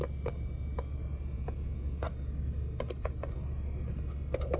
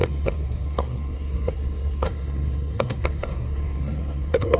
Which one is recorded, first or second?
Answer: first